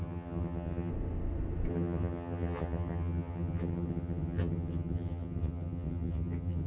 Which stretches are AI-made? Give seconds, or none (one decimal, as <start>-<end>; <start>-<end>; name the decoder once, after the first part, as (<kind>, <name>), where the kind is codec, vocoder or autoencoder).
0.0-0.9 (vocoder, HiFi-GAN); 1.7-6.7